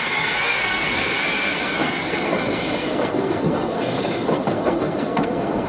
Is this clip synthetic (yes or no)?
yes